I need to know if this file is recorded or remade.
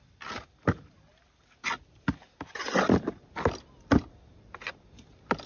recorded